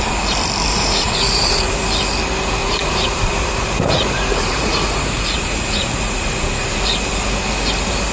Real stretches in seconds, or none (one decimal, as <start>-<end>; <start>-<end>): 0.0-0.7; 1.7-2.6; 7.0-8.1